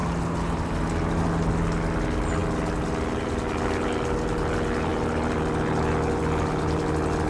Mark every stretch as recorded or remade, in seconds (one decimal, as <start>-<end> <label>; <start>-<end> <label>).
0.0-7.3 recorded